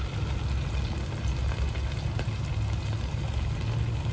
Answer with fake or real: real